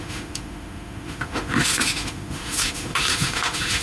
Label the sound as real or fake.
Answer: fake